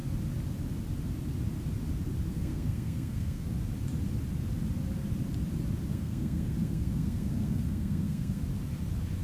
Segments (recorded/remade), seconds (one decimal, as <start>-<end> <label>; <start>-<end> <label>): 0.0-2.3 recorded; 2.3-3.5 remade; 3.5-5.9 recorded; 5.9-8.4 remade; 8.4-9.2 recorded